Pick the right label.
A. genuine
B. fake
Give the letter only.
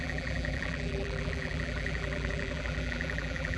B